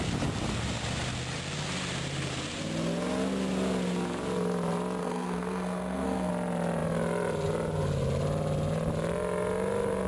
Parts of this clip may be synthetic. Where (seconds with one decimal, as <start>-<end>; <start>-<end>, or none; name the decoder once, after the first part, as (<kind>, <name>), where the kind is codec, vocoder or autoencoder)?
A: 5.0-6.3 (codec, SNAC)